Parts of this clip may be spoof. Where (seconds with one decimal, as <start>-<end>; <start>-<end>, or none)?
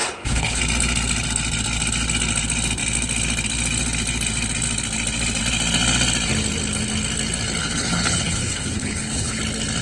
0.0-0.6; 7.6-9.4